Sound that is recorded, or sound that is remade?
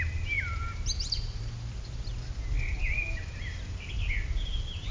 recorded